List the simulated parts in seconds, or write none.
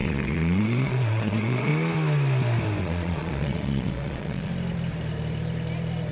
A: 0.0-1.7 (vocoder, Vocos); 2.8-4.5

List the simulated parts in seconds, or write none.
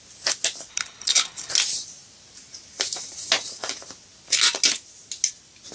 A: 0.7-1.5 (codec, HILCodec)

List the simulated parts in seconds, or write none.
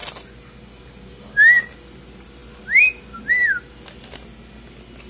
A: none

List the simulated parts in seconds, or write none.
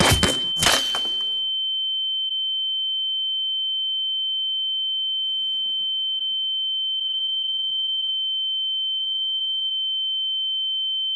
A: 7.0-8.1 (vocoder, BigVGAN v2); 9.0-9.7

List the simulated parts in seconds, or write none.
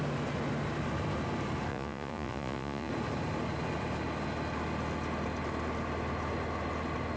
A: 1.7-2.9 (vocoder, Vocos)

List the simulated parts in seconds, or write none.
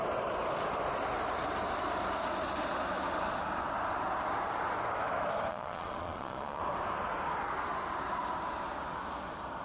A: 5.5-6.6 (vocoder, Vocos)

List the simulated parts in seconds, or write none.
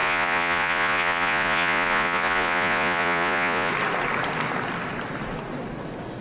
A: 0.0-3.7 (vocoder, Vocos)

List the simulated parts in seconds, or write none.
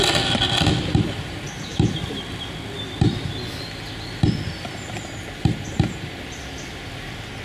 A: none